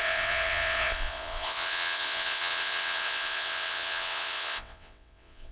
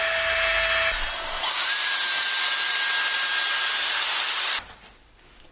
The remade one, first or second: first